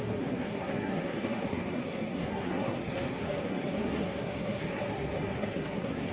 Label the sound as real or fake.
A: fake